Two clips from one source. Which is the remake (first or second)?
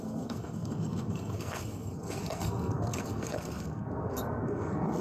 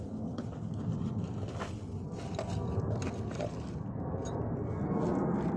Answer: first